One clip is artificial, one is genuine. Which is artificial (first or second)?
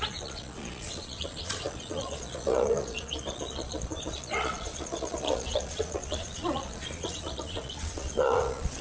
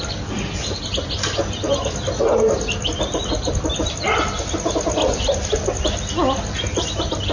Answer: first